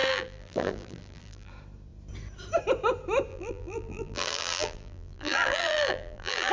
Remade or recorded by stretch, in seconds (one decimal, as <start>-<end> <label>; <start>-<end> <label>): 0.0-1.5 remade; 1.5-3.3 recorded; 3.3-6.5 remade